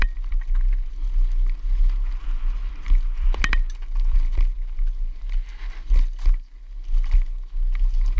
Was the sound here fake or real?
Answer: real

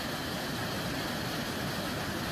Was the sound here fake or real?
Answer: real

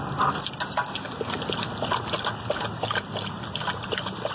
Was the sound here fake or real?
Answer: real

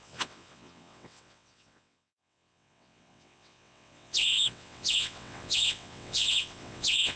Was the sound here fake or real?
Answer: fake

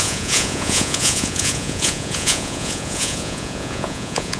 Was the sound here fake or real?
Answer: fake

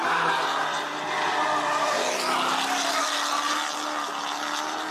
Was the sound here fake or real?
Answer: real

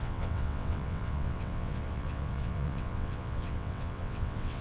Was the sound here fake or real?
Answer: fake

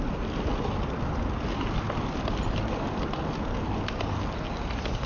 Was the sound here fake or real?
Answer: real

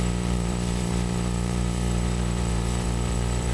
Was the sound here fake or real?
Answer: fake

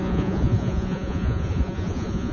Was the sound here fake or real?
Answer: fake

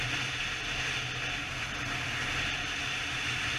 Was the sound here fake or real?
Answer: real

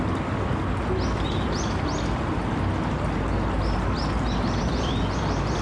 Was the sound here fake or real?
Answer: real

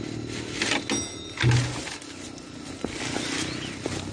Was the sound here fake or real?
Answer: real